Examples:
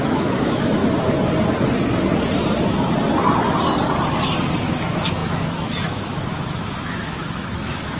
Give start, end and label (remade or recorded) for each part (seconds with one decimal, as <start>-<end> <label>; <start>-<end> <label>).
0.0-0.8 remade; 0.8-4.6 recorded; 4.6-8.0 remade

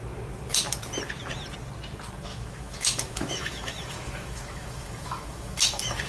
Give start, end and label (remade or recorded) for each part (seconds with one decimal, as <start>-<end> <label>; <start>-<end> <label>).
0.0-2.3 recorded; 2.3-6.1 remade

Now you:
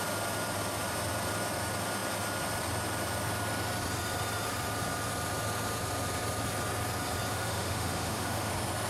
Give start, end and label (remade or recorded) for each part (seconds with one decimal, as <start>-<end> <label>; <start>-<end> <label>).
0.0-7.3 recorded; 7.3-8.5 remade; 8.5-8.9 recorded

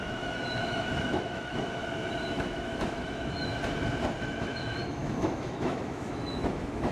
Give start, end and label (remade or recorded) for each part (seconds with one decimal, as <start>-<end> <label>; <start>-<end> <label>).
0.0-1.8 remade; 1.8-2.3 recorded; 2.3-3.5 remade; 3.5-4.2 recorded; 4.2-6.9 remade

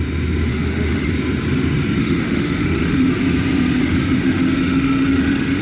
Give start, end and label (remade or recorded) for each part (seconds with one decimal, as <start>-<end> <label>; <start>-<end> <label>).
0.0-0.5 recorded; 0.5-1.1 remade; 1.1-2.0 recorded; 2.0-3.1 remade; 3.1-3.8 recorded; 3.8-5.6 remade

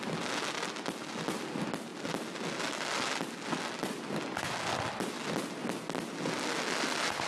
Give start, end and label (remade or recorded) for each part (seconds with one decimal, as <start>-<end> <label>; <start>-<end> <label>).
0.0-7.3 recorded

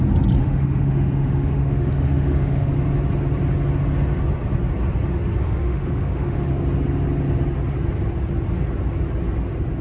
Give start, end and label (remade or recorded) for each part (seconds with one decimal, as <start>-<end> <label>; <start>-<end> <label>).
0.0-0.4 recorded; 0.4-2.7 remade; 2.7-5.4 recorded; 5.4-6.5 remade; 6.5-9.8 recorded